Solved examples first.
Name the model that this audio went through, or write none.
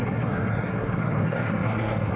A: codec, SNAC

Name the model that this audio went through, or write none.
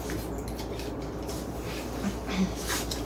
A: none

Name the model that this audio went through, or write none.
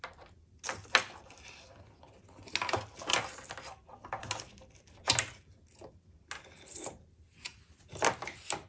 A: none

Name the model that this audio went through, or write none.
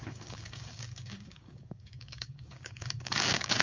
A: codec, DAC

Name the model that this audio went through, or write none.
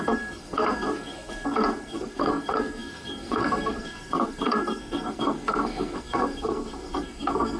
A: codec, SNAC